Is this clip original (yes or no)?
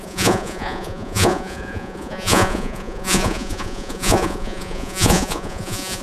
no